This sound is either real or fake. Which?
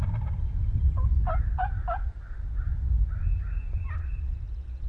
real